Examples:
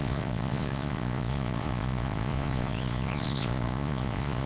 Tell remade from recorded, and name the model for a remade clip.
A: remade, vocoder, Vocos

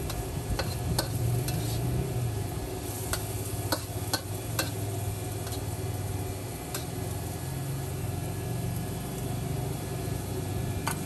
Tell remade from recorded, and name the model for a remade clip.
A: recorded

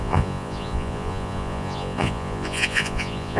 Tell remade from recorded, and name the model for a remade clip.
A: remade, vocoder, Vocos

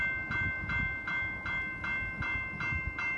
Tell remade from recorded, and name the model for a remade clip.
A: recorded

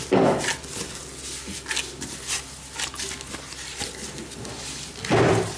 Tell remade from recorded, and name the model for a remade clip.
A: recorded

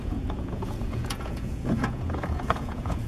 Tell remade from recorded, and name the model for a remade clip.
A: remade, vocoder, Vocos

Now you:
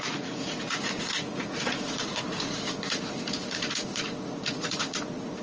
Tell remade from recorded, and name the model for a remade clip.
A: remade, vocoder, Vocos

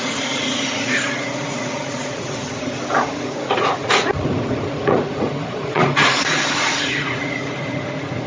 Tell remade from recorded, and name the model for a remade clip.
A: remade, vocoder, Vocos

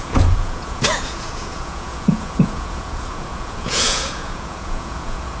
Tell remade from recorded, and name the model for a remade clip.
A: remade, vocoder, Vocos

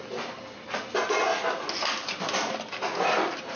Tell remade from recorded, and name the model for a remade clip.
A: recorded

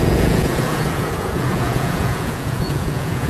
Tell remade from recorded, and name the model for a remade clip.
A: remade, vocoder, Vocos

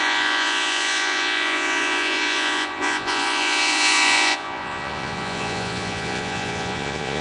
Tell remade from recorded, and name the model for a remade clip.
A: remade, vocoder, Vocos